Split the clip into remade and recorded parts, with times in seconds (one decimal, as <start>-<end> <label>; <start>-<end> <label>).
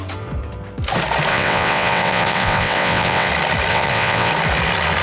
0.0-1.3 recorded; 1.3-3.3 remade; 3.3-3.7 recorded; 3.7-4.3 remade; 4.3-5.0 recorded